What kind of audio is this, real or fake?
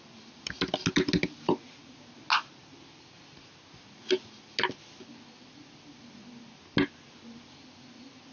real